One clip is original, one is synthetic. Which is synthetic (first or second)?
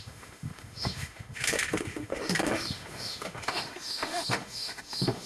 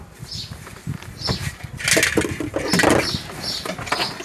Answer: first